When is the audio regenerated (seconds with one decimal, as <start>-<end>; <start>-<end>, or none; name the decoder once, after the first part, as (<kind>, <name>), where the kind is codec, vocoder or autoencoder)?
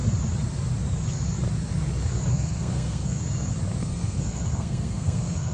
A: 2.3-3.2 (codec, SNAC); 3.8-5.5